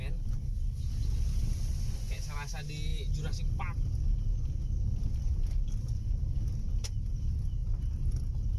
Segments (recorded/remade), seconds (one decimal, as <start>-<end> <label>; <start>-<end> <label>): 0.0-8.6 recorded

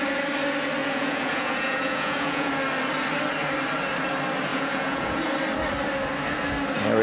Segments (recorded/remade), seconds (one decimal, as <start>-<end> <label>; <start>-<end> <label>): 0.0-0.8 recorded; 0.8-2.5 remade; 2.5-4.5 recorded; 4.5-5.2 remade; 5.2-7.0 recorded

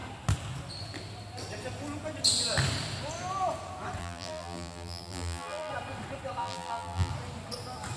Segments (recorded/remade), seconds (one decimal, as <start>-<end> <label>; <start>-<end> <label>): 0.0-4.0 recorded; 4.0-5.7 remade; 5.7-6.4 recorded; 6.4-7.1 remade; 7.1-8.0 recorded

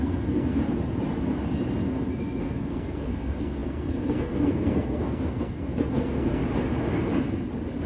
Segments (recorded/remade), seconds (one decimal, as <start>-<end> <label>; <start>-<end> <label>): 0.0-0.6 remade; 0.6-2.4 recorded; 2.4-6.4 remade; 6.4-7.9 recorded

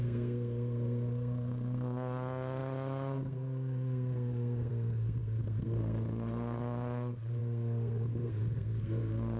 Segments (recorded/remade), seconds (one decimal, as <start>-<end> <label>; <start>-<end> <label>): 0.0-9.4 remade